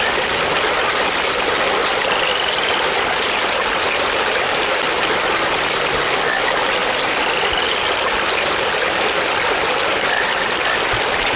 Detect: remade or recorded recorded